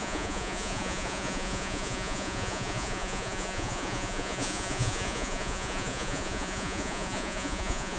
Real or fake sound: fake